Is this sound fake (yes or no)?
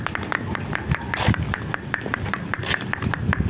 no